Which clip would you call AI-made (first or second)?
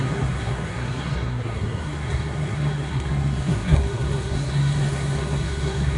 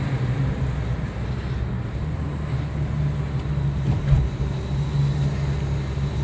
first